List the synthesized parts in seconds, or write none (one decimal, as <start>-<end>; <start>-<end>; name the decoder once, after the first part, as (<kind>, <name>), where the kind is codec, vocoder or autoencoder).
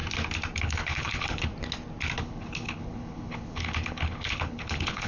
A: 0.6-1.5 (codec, HILCodec); 2.2-5.1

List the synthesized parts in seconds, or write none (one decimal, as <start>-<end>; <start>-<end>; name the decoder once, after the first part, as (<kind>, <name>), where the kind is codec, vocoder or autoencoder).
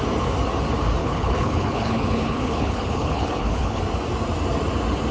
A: 1.0-3.8 (codec, HILCodec)